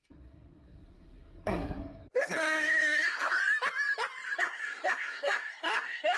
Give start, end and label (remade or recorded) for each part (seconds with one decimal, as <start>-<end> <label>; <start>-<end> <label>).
0.0-3.4 remade; 3.4-4.4 recorded; 4.4-6.2 remade